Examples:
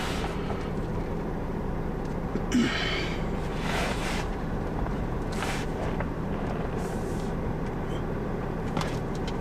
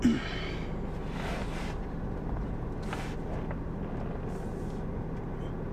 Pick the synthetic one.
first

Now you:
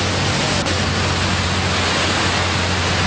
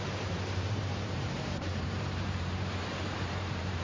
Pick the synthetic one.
second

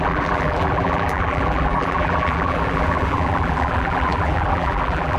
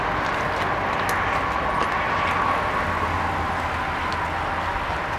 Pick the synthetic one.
first